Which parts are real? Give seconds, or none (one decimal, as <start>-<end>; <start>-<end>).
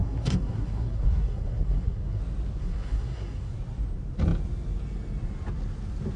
2.2-2.6; 3.5-6.2